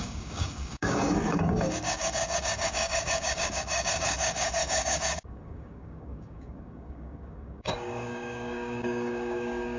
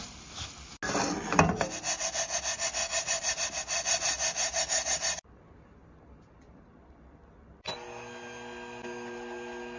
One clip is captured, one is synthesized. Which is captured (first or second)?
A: second